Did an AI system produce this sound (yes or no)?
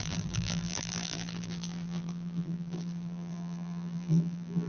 yes